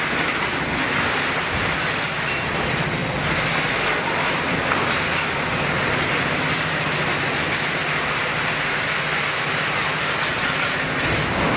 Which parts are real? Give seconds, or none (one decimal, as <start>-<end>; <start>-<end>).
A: 0.0-11.6